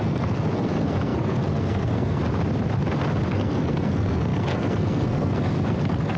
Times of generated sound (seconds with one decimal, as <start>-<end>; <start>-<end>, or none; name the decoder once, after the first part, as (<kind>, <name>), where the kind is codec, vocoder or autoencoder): 0.0-2.2 (codec, SNAC); 3.3-6.2